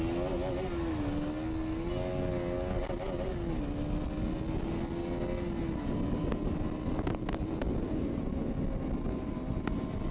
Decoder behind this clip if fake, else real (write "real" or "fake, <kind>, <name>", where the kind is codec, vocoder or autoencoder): real